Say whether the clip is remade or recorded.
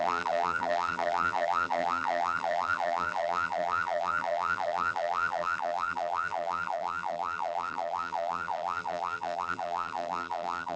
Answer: remade